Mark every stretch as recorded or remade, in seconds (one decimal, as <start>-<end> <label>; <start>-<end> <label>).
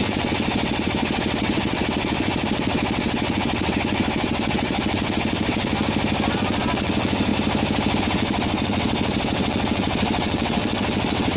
0.0-5.7 remade; 5.7-6.3 recorded; 6.3-7.3 remade; 7.3-8.0 recorded; 8.0-11.4 remade